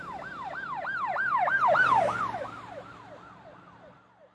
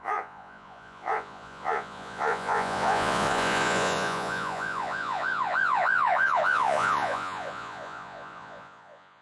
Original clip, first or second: first